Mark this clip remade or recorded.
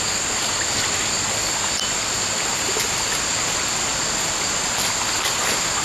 recorded